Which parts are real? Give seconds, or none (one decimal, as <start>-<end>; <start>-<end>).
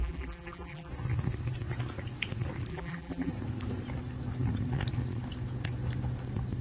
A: 0.9-2.7; 3.3-6.6